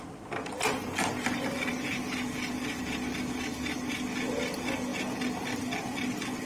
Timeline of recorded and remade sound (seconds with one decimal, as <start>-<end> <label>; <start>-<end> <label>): 0.0-6.5 recorded